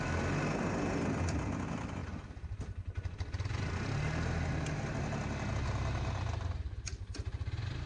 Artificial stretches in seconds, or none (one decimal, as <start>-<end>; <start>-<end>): none